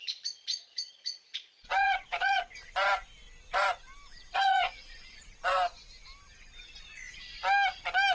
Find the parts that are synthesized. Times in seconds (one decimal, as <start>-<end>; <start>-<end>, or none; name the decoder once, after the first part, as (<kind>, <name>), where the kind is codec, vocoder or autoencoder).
0.0-2.7 (vocoder, Vocos); 4.1-5.3